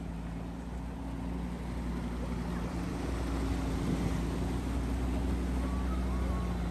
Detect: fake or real real